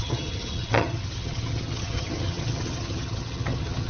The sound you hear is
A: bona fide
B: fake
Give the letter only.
B